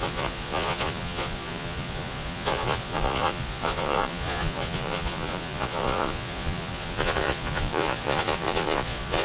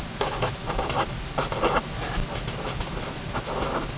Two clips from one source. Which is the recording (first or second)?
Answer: second